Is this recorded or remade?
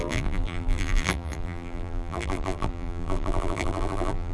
remade